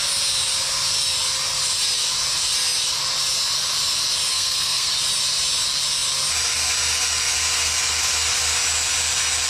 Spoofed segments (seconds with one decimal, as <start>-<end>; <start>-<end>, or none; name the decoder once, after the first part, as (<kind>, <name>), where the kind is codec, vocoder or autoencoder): 4.3-4.9 (codec, SNAC)